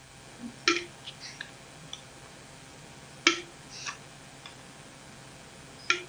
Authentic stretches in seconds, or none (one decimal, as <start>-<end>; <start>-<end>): 0.0-6.1